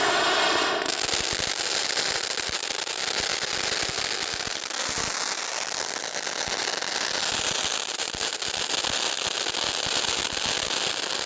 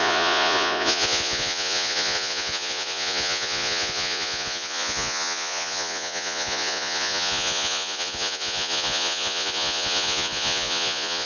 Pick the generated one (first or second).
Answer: second